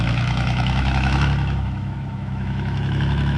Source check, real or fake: fake